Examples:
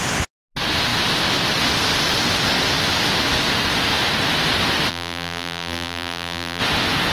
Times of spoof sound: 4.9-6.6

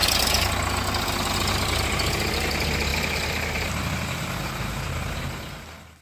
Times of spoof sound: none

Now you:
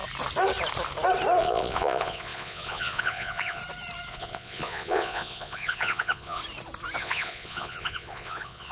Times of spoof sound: 1.4-3.6; 4.1-6.4; 7.0-8.7

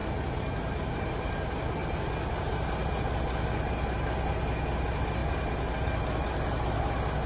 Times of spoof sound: none

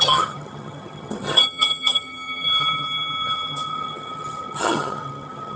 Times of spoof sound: 0.0-5.6

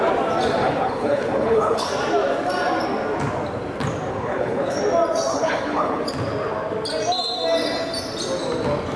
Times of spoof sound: 0.6-1.9; 4.1-4.8; 5.3-6.0